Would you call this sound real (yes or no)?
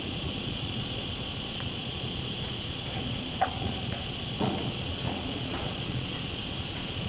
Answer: no